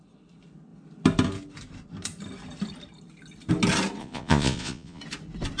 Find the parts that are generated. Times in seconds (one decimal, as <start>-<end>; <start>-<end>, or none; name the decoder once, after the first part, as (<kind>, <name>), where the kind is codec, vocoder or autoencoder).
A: 4.0-5.0 (vocoder, Vocos)